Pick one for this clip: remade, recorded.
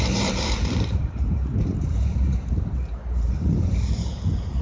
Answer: remade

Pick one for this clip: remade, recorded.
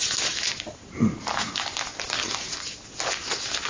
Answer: recorded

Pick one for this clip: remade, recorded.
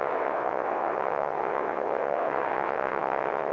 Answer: remade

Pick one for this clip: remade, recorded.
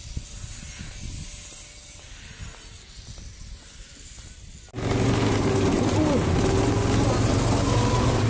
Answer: recorded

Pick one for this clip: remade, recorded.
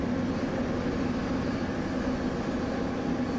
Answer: recorded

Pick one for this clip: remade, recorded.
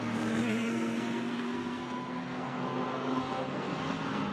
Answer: remade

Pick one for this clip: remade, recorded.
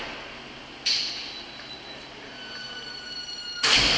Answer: recorded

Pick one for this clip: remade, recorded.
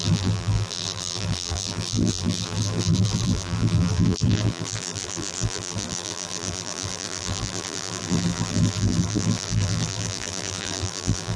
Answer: remade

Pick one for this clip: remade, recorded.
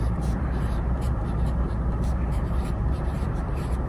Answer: remade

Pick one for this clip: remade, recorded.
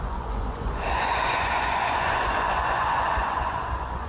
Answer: remade